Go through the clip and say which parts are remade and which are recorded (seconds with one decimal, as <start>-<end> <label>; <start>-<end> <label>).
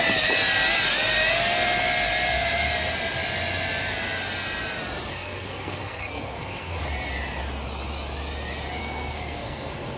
0.0-5.1 recorded; 5.1-6.8 remade; 6.8-8.8 recorded; 8.8-10.0 remade